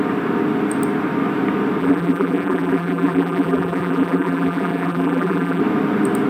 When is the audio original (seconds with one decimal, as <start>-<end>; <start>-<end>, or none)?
0.0-1.8; 5.6-6.3